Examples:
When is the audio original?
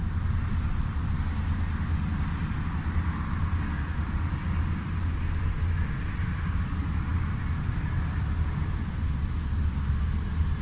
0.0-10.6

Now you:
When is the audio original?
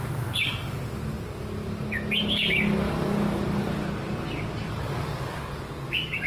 0.5-2.2; 3.8-4.7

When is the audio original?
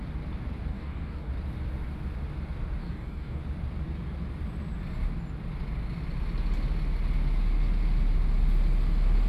0.0-0.7; 1.3-2.8; 3.4-9.3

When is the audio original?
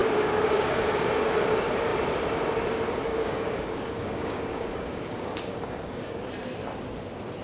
0.8-3.1; 6.3-7.4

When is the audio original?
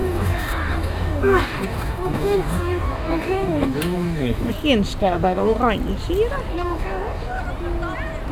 4.5-5.0; 5.6-6.5; 7.4-8.3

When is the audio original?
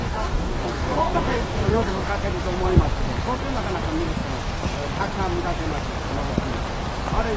2.1-7.4